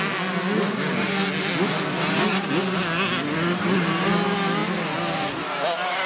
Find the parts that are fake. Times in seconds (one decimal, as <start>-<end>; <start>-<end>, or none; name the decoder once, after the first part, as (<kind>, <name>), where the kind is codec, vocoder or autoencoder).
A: none